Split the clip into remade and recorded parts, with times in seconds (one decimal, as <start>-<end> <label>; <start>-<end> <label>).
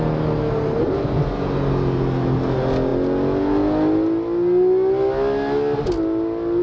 0.0-6.6 recorded